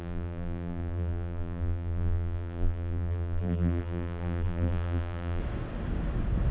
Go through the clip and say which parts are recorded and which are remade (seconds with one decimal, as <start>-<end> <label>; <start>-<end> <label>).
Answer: 0.0-5.4 remade; 5.4-6.5 recorded